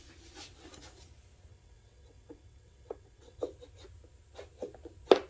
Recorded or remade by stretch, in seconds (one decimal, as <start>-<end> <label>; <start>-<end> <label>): 0.0-1.5 recorded; 1.5-3.4 remade; 3.4-5.3 recorded